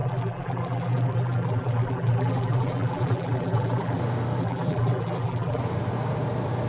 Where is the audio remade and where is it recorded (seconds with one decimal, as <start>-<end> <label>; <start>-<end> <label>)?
0.0-4.0 remade; 4.0-4.4 recorded; 4.4-5.6 remade; 5.6-6.7 recorded